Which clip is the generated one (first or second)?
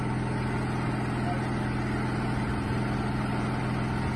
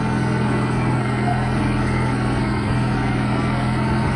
second